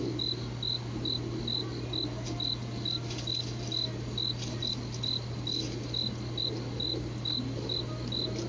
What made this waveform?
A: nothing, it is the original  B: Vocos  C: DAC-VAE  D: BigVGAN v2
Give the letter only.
A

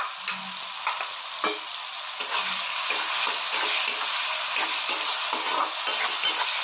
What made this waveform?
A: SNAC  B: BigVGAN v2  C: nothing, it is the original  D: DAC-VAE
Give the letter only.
C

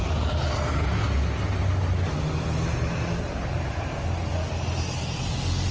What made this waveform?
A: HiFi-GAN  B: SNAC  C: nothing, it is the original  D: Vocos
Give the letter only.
C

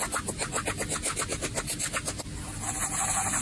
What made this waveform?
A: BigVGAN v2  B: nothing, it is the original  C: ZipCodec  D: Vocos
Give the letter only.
B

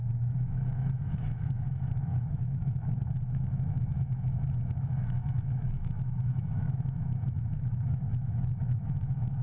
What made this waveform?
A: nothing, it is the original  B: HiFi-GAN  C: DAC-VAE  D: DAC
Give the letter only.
C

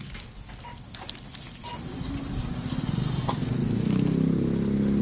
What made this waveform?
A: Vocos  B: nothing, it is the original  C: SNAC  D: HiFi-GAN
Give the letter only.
B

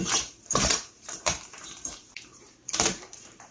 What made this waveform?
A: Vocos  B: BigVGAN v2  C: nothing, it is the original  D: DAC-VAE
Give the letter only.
B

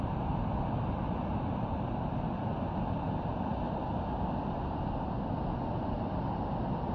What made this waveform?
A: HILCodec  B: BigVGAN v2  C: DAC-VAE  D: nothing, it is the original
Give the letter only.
D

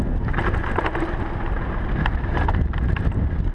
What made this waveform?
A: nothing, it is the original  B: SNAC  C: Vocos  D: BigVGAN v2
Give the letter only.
A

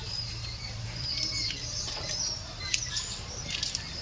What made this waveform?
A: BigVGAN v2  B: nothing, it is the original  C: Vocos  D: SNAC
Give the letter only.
A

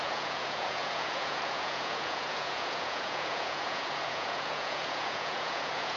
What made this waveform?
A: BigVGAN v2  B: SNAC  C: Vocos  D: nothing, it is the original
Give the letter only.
C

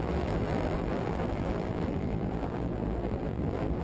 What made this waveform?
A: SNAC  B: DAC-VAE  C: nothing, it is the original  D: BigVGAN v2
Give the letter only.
D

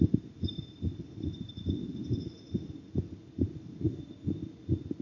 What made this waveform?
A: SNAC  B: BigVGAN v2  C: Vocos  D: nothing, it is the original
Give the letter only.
D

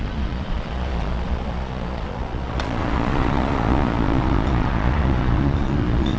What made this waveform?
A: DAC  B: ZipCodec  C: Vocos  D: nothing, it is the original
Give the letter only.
C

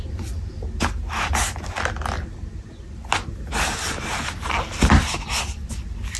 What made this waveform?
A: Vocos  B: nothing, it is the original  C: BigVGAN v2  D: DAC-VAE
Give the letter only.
B